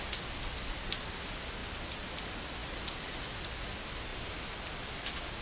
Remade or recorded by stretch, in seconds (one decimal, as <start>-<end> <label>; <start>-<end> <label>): 0.0-5.4 recorded